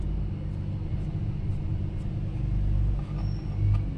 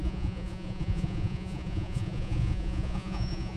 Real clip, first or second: first